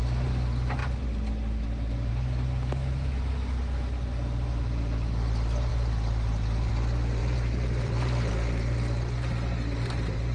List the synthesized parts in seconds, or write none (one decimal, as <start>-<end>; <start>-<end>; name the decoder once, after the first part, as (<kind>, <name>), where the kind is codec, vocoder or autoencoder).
7.2-8.3 (vocoder, BigVGAN v2)